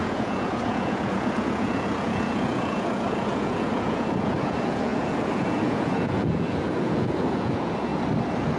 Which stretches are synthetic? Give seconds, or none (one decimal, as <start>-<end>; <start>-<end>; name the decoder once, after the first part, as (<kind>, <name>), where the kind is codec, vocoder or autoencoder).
0.0-7.9 (vocoder, Vocos)